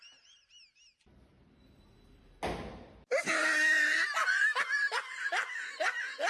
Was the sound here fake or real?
real